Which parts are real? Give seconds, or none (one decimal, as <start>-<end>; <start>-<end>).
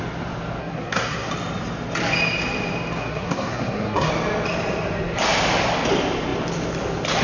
0.0-0.6; 1.3-3.0; 4.1-7.2